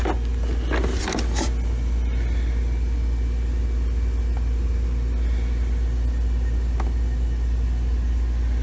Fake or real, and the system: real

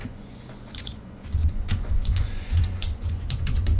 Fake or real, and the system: fake, vocoder, Vocos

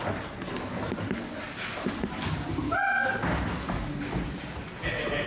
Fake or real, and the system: real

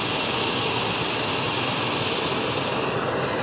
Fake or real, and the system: real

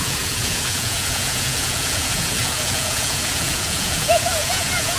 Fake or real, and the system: fake, vocoder, Vocos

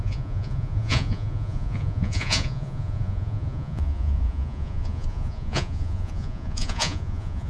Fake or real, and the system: fake, vocoder, Vocos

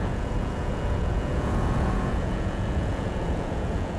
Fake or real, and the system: fake, vocoder, Vocos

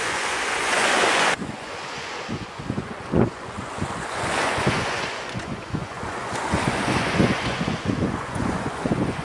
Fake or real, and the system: fake, vocoder, Vocos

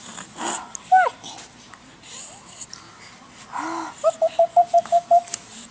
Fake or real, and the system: real